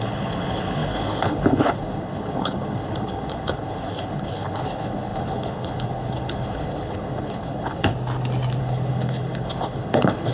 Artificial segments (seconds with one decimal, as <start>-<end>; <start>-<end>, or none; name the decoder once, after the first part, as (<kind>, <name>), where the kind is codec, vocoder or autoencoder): 0.0-7.9 (codec, HILCodec); 8.6-10.3